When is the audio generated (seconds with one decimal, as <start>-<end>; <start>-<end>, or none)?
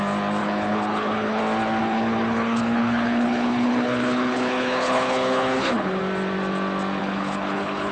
0.4-1.4; 1.8-6.0; 7.0-7.9